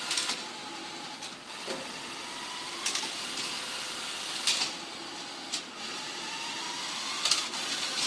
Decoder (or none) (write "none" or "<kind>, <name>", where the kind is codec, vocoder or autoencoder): none